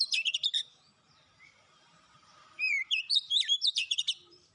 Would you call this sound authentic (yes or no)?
no